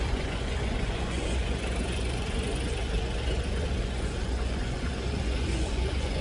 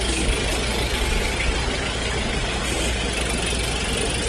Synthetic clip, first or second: first